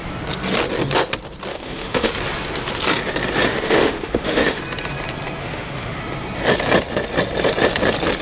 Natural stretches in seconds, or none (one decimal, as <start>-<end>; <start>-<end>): 0.0-1.5; 2.1-3.5; 4.6-5.4; 6.0-8.2